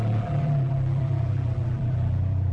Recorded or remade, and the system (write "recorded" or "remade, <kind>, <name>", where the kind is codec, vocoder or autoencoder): remade, vocoder, BigVGAN v2